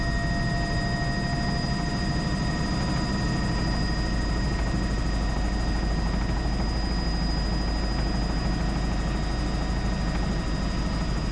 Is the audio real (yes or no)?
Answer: yes